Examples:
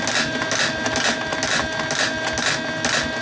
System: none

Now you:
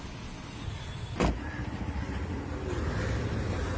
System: none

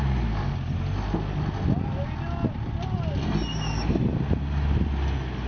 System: none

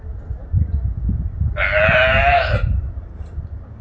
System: none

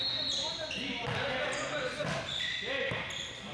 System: none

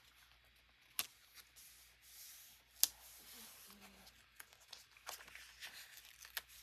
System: none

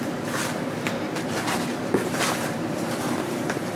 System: vocoder, BigVGAN v2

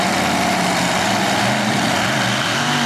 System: vocoder, BigVGAN v2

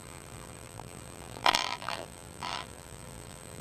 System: vocoder, BigVGAN v2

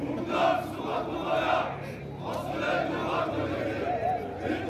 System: none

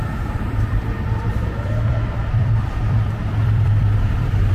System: vocoder, BigVGAN v2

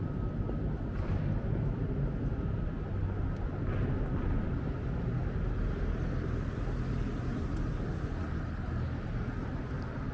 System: none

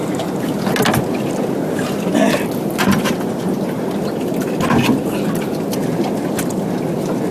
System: none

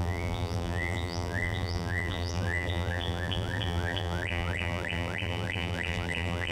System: vocoder, BigVGAN v2